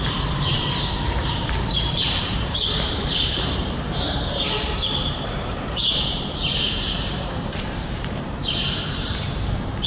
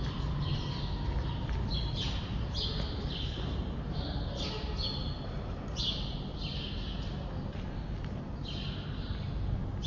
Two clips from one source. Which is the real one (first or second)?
second